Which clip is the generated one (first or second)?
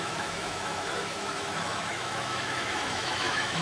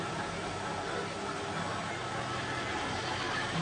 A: first